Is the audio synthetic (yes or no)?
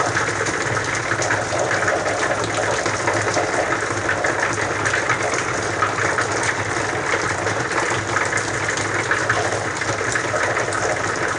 no